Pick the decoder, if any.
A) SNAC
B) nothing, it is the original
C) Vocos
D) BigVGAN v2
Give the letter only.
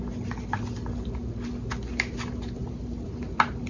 B